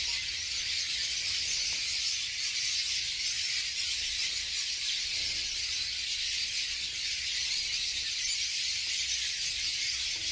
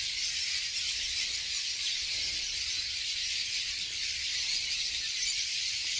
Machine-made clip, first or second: second